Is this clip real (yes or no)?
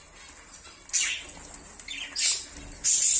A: yes